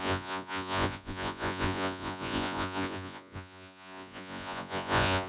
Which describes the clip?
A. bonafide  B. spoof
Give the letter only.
B